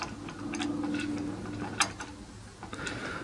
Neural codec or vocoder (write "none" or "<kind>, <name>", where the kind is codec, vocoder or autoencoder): none